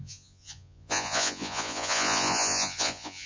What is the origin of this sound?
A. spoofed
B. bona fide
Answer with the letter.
A